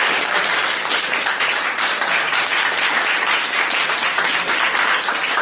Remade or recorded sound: recorded